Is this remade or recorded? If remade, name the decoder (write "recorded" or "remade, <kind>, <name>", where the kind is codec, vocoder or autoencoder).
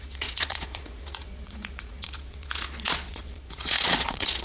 remade, vocoder, Vocos